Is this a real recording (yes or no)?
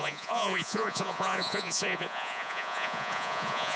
no